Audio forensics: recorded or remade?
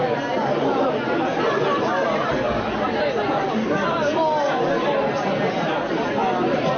recorded